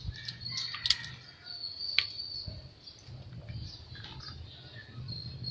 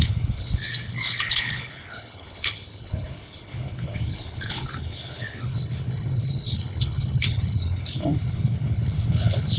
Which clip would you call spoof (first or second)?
second